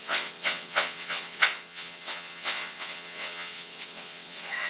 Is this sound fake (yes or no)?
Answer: yes